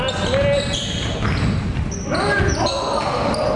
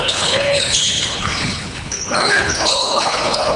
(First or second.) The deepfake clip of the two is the second